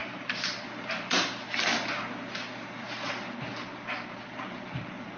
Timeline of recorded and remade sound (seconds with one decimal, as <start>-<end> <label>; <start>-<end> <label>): 0.0-5.2 recorded